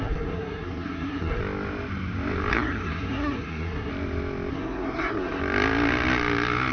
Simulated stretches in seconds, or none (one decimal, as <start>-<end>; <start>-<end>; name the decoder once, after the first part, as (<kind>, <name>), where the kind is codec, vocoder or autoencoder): 0.0-1.4 (codec, SNAC); 2.5-3.9; 4.5-5.4